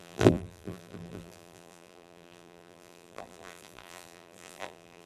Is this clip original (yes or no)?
no